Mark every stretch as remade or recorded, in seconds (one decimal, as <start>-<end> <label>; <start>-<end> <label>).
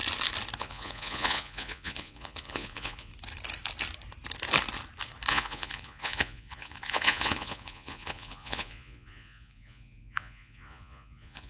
0.0-0.6 recorded; 0.6-3.1 remade; 3.1-5.3 recorded; 5.3-11.5 remade